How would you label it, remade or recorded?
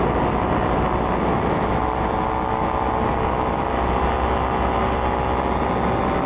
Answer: recorded